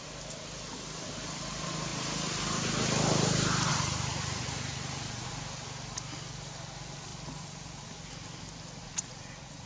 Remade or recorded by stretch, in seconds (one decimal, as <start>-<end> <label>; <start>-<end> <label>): 0.0-3.7 recorded; 3.7-5.3 remade; 5.3-8.8 recorded; 8.8-9.7 remade